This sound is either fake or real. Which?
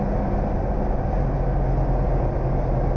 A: real